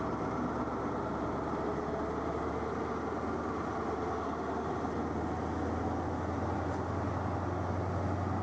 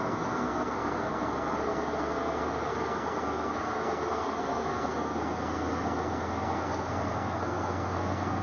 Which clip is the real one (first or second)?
first